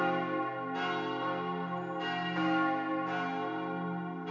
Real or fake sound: real